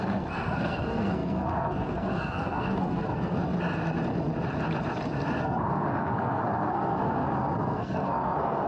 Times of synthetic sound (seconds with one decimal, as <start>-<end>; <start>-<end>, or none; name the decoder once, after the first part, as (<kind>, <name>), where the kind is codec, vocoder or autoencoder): 0.0-3.4 (codec, SNAC); 5.4-8.7

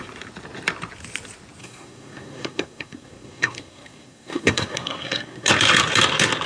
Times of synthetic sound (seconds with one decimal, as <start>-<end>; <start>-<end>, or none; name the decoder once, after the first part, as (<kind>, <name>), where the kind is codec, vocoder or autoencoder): 1.6-5.5 (codec, SNAC)

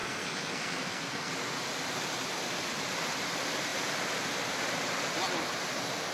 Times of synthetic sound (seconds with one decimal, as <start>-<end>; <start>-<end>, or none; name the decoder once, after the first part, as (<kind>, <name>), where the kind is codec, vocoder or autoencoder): 0.0-1.3 (codec, SNAC)